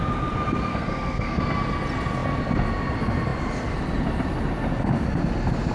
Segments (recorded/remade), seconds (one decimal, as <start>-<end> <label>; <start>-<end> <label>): 0.0-0.7 recorded; 0.7-1.4 remade; 1.4-5.7 recorded